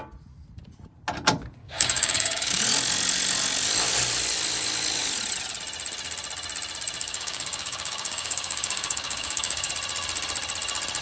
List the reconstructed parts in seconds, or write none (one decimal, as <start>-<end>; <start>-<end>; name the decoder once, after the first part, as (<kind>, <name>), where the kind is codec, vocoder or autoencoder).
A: 1.6-2.6 (codec, DAC); 7.0-9.7